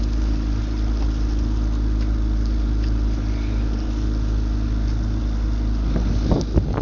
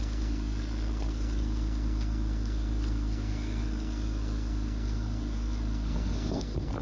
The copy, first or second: second